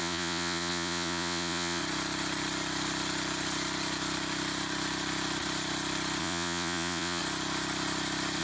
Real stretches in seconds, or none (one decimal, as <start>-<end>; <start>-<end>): 1.8-6.2; 7.2-8.4